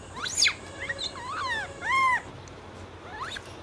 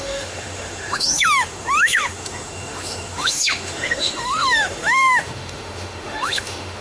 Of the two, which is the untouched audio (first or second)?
first